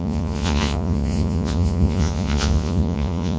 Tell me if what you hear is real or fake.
fake